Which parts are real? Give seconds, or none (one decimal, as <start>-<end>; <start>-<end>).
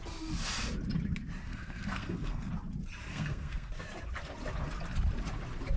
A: 0.0-1.5; 2.5-3.1; 3.7-5.8